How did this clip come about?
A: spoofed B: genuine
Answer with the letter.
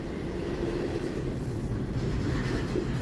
A